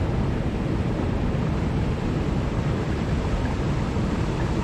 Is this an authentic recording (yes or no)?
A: no